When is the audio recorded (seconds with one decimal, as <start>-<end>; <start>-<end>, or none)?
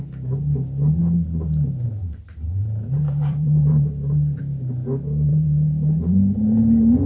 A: 0.0-2.0; 4.4-5.3; 6.0-7.1